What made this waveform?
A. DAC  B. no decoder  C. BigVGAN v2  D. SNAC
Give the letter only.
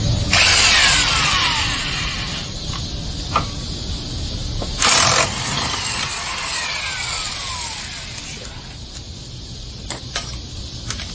B